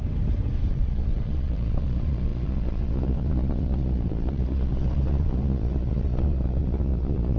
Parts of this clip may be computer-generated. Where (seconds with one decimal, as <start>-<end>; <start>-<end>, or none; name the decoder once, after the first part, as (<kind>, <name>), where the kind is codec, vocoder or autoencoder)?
0.7-7.4 (vocoder, Vocos)